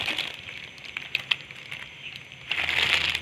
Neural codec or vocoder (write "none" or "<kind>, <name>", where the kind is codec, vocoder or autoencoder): none